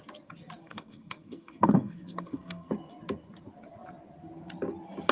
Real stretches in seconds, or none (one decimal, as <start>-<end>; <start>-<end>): 0.0-0.6; 2.7-5.1